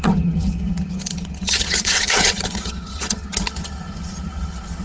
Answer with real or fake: fake